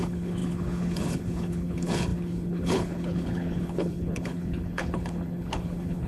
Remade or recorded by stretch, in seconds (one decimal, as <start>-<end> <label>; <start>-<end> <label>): 0.0-6.1 remade